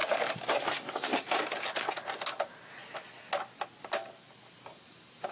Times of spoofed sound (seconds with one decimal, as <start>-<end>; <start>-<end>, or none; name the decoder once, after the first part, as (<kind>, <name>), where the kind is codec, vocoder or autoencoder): 0.5-1.1 (vocoder, BigVGAN v2); 4.1-5.3